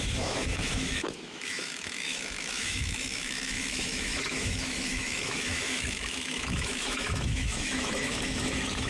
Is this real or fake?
fake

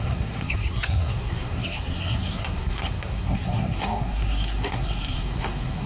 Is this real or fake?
fake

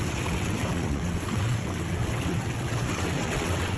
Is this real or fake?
fake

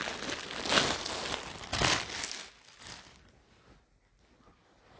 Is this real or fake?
real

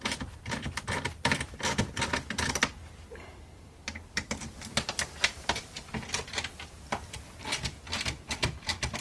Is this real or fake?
fake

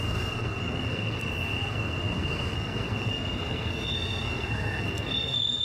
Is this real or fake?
fake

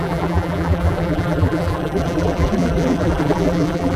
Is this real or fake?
fake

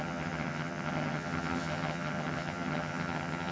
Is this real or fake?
fake